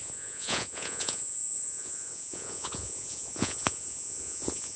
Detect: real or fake fake